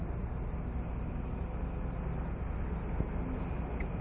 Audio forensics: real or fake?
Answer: real